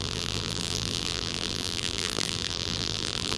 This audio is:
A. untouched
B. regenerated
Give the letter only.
B